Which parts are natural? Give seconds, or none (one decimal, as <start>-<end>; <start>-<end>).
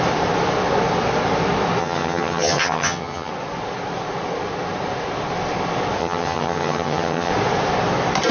0.0-1.8; 3.3-6.0; 7.3-8.3